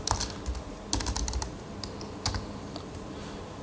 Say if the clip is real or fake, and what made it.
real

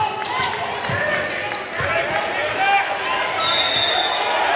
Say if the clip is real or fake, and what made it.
real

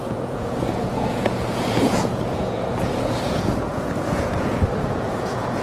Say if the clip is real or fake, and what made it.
fake, vocoder, Vocos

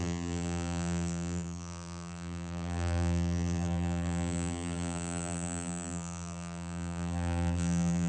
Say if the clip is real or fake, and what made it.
fake, vocoder, BigVGAN v2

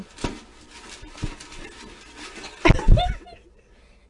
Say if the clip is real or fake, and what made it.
real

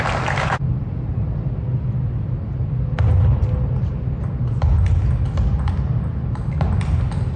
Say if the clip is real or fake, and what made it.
real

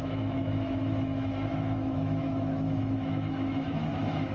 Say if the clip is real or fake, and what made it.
fake, autoencoder, DAC-VAE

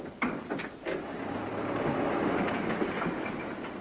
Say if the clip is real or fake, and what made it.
real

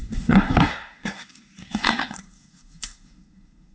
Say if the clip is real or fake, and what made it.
fake, codec, SNAC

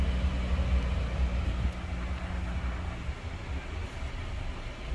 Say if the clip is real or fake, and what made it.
real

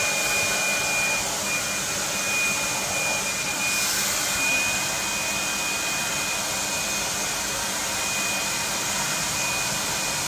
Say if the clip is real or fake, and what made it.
real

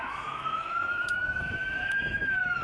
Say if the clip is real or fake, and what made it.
fake, autoencoder, DAC-VAE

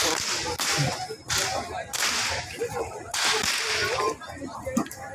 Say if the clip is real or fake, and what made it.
real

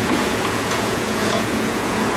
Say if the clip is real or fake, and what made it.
fake, vocoder, Vocos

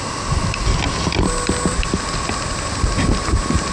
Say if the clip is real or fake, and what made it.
real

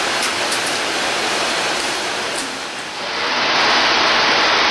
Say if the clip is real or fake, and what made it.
real